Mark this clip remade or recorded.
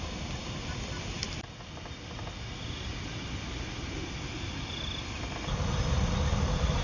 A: recorded